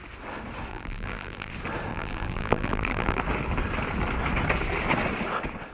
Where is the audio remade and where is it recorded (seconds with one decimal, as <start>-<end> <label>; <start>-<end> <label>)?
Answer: 0.0-0.7 recorded; 0.7-1.5 remade; 1.5-1.9 recorded; 1.9-3.2 remade; 3.2-5.7 recorded